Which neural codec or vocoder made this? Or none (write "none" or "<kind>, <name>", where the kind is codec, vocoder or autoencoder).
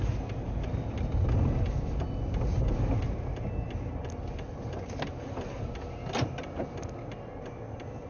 none